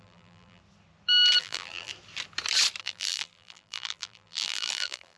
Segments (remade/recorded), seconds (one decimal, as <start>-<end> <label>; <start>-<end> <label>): 0.0-0.6 remade; 0.6-1.4 recorded; 1.4-1.9 remade; 1.9-2.8 recorded; 2.8-5.2 remade